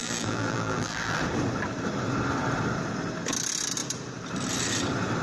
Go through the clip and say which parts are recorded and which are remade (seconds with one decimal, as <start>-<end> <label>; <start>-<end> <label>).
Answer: 0.0-1.2 remade; 1.2-5.2 recorded